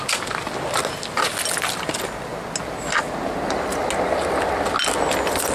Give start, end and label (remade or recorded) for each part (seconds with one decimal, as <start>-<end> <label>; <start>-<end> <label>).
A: 0.0-5.5 recorded